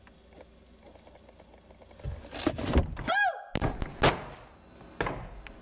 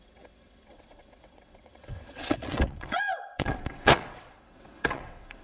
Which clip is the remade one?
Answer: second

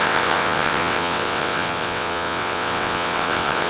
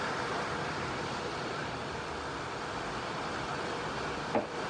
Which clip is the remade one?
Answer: first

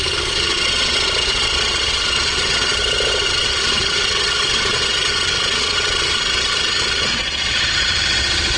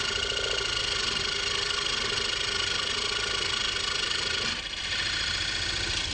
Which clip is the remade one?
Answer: first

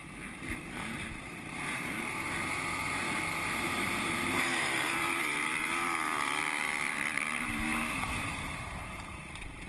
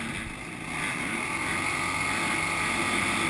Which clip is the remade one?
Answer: first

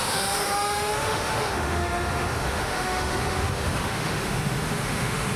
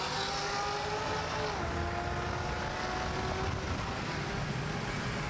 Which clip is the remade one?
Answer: first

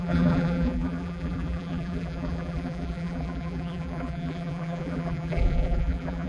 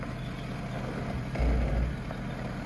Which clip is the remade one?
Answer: first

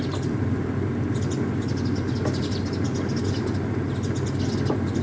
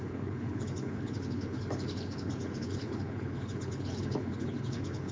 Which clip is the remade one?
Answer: second